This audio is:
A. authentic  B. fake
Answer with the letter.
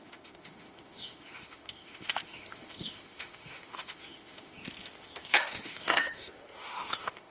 B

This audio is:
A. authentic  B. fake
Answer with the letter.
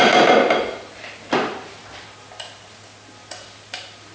A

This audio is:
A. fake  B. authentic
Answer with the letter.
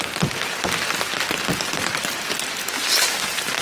B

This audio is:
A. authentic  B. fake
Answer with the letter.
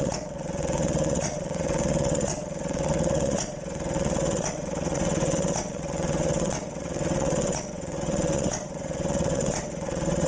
B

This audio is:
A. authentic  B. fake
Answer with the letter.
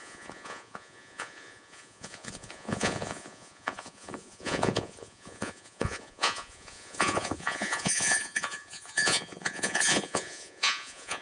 B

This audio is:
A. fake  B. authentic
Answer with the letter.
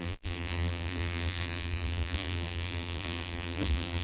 A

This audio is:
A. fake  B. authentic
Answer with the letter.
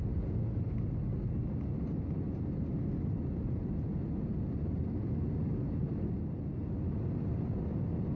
B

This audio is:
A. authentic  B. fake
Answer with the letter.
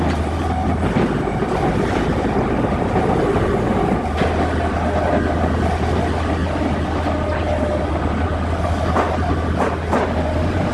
A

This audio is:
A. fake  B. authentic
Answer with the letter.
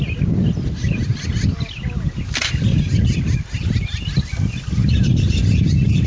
B